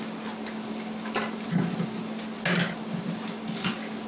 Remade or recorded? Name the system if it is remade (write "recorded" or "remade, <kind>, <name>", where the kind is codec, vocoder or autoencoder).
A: recorded